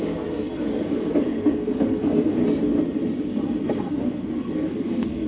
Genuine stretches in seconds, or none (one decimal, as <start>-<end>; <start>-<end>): 2.4-3.6